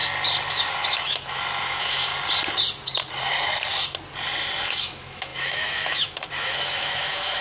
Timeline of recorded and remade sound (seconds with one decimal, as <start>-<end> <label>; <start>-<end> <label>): 0.0-0.5 recorded; 0.5-2.1 remade; 2.1-4.6 recorded; 4.6-7.4 remade